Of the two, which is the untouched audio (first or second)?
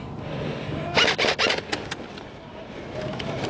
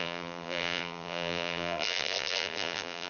first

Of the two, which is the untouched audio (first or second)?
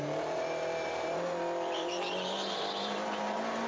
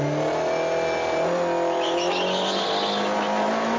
second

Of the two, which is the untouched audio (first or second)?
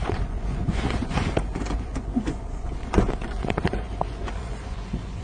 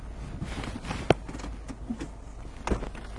second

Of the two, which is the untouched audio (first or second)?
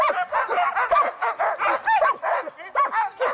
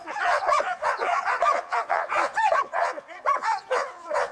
first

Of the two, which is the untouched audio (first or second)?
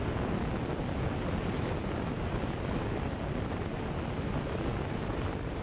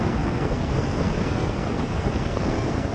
first